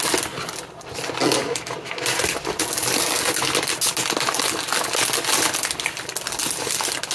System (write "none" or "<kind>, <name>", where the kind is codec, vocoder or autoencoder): none